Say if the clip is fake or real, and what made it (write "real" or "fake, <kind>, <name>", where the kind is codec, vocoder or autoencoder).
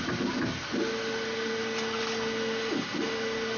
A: real